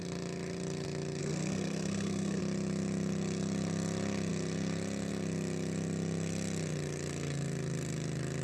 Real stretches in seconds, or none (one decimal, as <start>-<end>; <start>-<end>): 0.0-1.2; 2.4-8.4